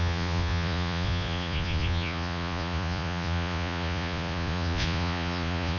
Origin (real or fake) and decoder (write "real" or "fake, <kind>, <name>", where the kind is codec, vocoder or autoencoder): fake, vocoder, Vocos